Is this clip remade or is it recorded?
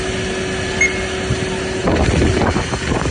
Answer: recorded